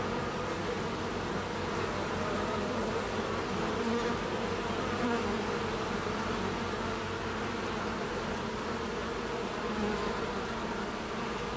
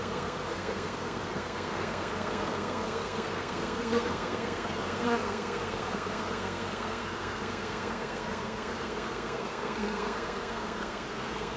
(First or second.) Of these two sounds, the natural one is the first